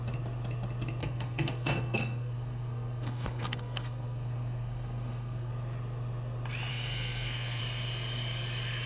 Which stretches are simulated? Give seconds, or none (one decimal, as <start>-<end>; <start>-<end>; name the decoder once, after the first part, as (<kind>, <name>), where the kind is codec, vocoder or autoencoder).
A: 1.0-5.5 (codec, SNAC); 6.7-7.6